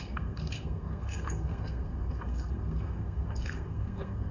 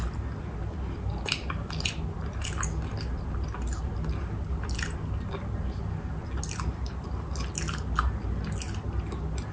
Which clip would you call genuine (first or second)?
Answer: second